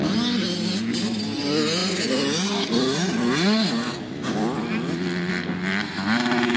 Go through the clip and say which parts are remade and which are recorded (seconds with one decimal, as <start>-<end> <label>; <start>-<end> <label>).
0.0-6.6 recorded